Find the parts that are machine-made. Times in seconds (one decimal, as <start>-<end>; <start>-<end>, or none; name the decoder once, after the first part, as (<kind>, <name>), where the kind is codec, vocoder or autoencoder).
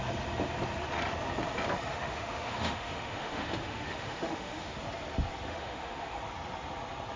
1.9-4.8 (autoencoder, DAC-VAE); 5.5-6.2